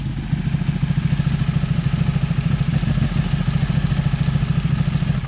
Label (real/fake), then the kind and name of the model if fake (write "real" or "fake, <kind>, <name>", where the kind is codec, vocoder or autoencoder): real